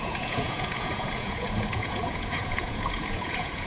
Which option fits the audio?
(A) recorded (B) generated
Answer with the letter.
B